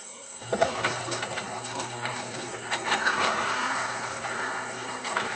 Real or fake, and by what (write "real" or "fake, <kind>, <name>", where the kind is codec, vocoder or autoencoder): fake, codec, SNAC